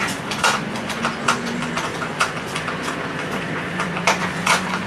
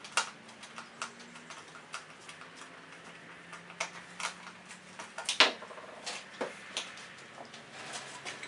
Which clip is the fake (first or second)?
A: first